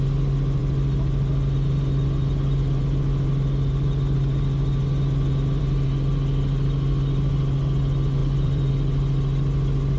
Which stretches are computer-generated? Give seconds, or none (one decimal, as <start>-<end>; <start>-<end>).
8.2-8.7

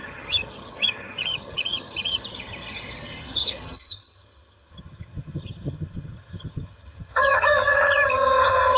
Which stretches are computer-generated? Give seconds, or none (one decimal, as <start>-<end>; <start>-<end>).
0.0-8.8

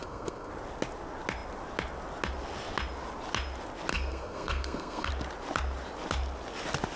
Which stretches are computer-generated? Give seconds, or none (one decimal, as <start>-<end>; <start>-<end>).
0.0-0.5; 3.9-5.1

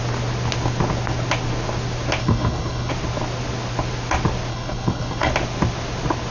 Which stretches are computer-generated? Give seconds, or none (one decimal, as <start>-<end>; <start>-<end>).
2.2-2.9; 4.5-5.3

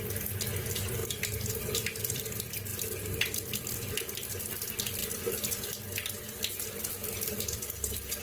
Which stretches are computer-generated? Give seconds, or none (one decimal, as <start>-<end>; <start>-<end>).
1.0-2.2; 7.0-8.2